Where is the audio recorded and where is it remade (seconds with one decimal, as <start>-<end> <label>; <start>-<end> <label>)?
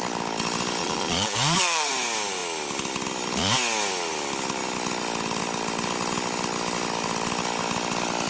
0.0-0.8 recorded; 0.8-1.9 remade; 1.9-8.3 recorded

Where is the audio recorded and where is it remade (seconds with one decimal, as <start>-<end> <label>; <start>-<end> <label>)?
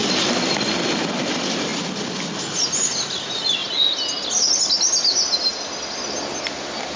0.0-7.0 recorded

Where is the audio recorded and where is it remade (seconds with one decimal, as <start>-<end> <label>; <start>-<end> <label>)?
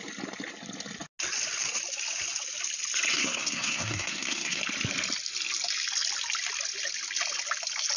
0.0-3.1 recorded; 3.1-4.6 remade; 4.6-8.0 recorded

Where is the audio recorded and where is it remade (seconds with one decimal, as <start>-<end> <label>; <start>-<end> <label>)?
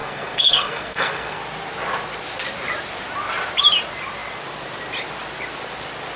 0.0-1.4 remade; 1.4-6.2 recorded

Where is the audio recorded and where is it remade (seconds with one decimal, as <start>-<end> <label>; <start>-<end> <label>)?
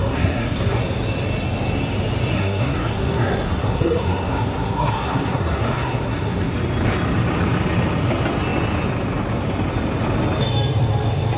0.0-0.8 remade; 0.8-2.3 recorded; 2.3-6.5 remade; 6.5-11.4 recorded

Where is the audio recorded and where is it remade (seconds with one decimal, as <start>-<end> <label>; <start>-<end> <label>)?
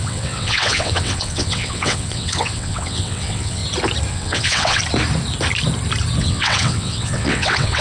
0.0-3.6 remade; 3.6-4.1 recorded; 4.1-4.8 remade; 4.8-6.2 recorded; 6.2-7.8 remade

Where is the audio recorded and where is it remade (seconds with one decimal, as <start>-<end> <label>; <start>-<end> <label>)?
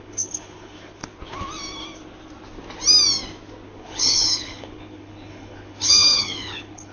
0.0-1.0 remade; 1.0-3.8 recorded; 3.8-6.9 remade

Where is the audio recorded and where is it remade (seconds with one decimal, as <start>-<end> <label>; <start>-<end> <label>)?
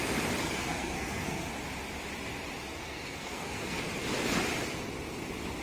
0.0-0.4 recorded; 0.4-1.5 remade; 1.5-2.8 recorded; 2.8-3.8 remade; 3.8-5.6 recorded